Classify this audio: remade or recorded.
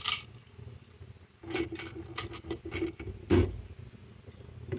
recorded